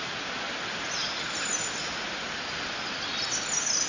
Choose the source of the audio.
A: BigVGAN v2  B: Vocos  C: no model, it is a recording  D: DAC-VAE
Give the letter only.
C